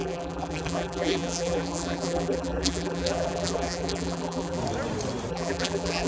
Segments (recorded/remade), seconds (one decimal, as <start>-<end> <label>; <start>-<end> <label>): 0.0-4.6 remade; 4.6-5.3 recorded; 5.3-6.1 remade